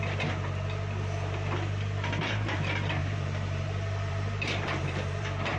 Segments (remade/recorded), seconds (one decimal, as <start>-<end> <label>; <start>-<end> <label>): 0.0-3.0 recorded; 3.0-5.6 remade